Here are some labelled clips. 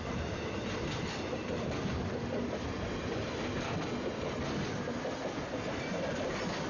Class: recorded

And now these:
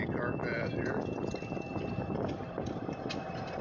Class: recorded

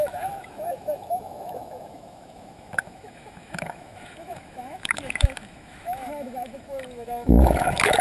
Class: remade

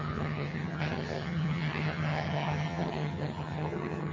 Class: remade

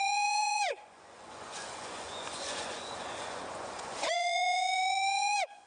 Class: remade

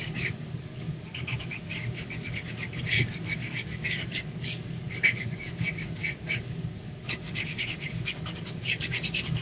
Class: remade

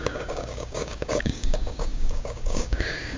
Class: remade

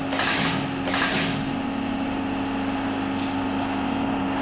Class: recorded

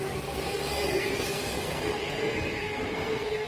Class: remade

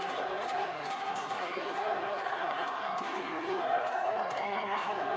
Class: remade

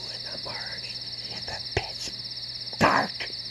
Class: recorded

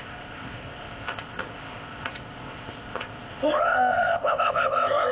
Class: remade